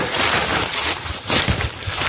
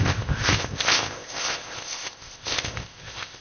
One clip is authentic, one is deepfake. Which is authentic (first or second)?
first